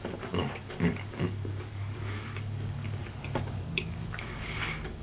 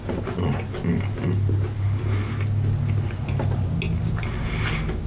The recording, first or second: second